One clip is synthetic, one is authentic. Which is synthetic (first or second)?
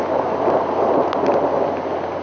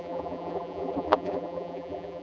second